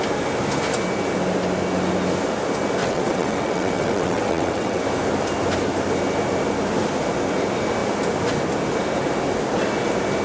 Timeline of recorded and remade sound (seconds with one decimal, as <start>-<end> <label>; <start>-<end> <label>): 0.0-2.8 recorded; 2.8-4.8 remade; 4.8-10.2 recorded